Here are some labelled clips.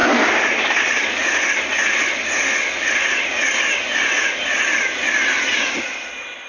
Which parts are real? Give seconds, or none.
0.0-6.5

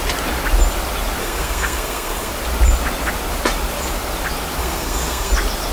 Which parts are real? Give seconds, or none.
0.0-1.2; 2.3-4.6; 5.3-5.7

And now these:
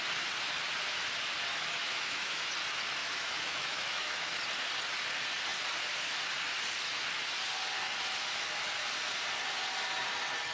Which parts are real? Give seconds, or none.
0.0-1.5; 2.5-3.0; 4.4-10.5